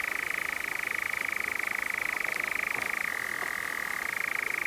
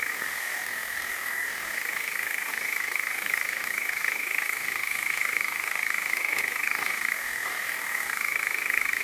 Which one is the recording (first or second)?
first